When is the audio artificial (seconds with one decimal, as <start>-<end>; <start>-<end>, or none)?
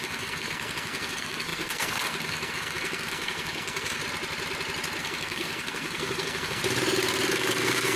0.0-4.0; 5.0-6.6; 7.3-8.0